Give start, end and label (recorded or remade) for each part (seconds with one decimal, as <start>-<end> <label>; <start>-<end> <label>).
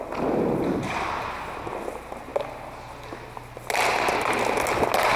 0.0-5.2 recorded